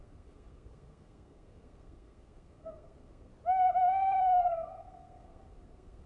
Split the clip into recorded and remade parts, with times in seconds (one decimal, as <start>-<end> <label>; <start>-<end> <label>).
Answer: 0.0-3.3 remade; 3.3-4.2 recorded; 4.2-6.1 remade